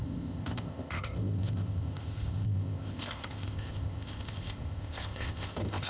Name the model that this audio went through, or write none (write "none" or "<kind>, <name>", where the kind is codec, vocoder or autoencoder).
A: codec, ZipCodec